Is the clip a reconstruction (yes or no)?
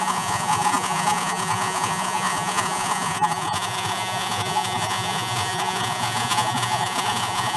yes